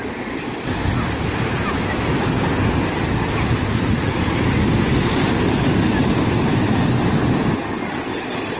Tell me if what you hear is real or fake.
real